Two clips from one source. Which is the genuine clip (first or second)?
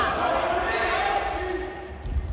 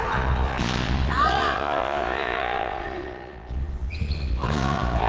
first